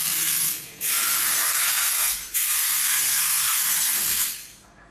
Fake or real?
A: fake